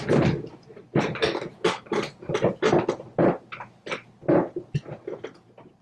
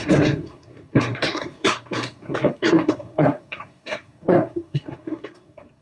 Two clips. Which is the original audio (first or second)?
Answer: first